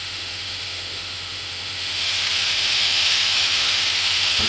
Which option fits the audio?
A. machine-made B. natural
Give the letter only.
A